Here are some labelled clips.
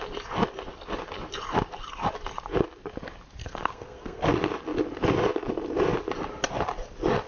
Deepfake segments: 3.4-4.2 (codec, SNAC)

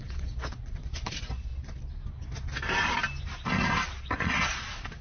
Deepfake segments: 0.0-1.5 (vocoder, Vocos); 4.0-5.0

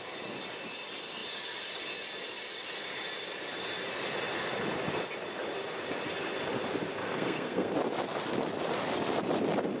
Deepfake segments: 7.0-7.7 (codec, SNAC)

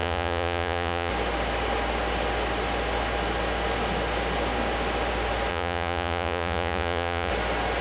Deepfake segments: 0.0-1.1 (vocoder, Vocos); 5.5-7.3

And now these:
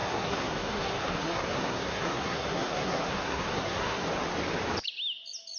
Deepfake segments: 0.0-4.1 (codec, SNAC)

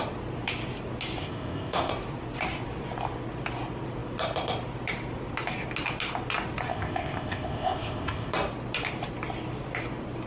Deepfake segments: 1.2-1.9 (codec, ZipCodec); 6.7-8.3